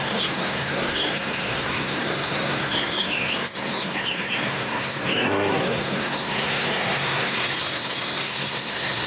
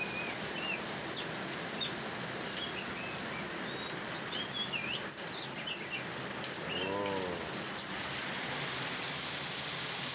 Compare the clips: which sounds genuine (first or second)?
second